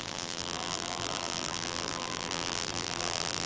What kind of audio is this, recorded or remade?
remade